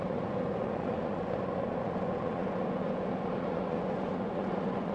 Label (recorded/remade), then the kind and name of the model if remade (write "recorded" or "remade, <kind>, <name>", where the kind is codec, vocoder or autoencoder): remade, vocoder, Vocos